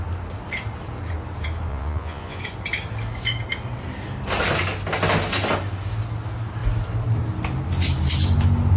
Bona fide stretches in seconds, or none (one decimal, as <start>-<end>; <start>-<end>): 0.0-1.7; 2.4-8.8